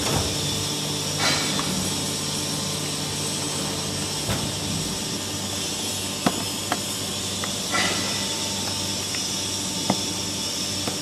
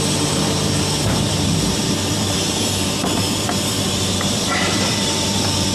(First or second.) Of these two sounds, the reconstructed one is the second